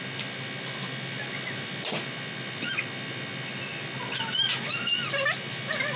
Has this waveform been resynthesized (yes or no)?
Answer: no